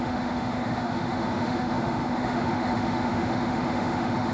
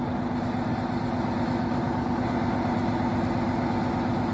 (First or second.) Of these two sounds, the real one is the second